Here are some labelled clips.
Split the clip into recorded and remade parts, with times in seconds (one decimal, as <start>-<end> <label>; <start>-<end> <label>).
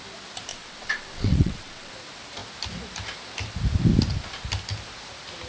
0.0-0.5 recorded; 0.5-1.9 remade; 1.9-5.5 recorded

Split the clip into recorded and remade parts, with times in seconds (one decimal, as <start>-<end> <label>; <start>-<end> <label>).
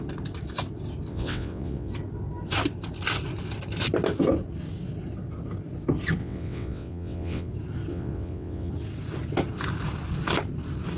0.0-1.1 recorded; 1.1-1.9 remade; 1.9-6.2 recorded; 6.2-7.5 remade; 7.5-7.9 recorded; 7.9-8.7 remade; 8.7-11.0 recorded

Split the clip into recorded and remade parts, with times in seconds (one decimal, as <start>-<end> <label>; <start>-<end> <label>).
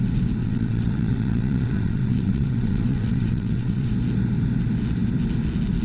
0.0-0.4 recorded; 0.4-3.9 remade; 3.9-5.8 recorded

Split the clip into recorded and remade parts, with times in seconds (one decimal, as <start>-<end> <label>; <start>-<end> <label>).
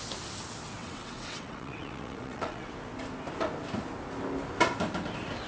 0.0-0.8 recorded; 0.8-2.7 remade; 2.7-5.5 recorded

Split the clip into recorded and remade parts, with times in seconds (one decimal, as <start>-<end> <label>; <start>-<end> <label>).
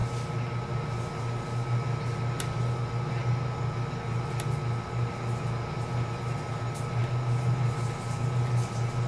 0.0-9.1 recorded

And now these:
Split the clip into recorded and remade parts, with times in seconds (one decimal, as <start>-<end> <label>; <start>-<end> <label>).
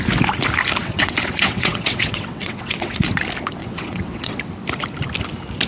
0.0-0.8 recorded; 0.8-3.1 remade; 3.1-3.6 recorded; 3.6-4.4 remade; 4.4-5.7 recorded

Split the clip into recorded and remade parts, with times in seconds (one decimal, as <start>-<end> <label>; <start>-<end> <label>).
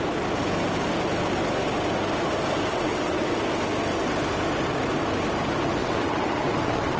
0.0-2.7 recorded; 2.7-3.3 remade; 3.3-5.8 recorded; 5.8-7.0 remade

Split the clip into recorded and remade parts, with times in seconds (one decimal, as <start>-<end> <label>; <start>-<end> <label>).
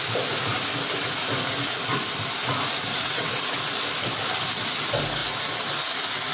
0.0-2.9 recorded; 2.9-3.4 remade; 3.4-6.3 recorded